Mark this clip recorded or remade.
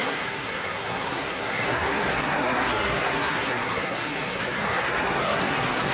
remade